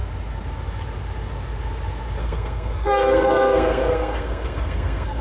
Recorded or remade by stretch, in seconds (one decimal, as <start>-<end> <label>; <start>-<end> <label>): 0.0-2.2 recorded; 2.2-5.2 remade